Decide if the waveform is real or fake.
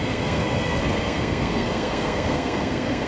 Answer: fake